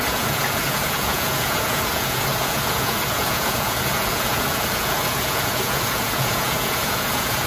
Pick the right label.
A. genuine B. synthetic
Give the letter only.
B